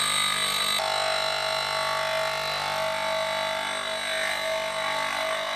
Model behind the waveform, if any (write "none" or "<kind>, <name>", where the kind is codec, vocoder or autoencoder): none